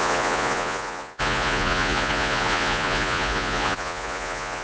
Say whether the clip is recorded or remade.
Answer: remade